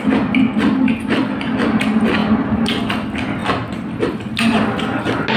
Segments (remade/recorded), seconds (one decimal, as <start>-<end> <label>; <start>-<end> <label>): 0.0-5.4 recorded